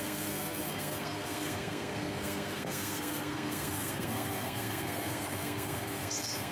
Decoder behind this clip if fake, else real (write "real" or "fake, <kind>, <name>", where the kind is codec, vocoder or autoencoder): fake, codec, SNAC